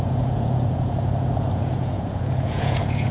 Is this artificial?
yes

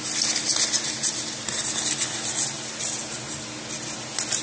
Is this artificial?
no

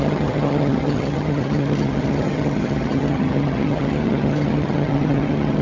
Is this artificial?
yes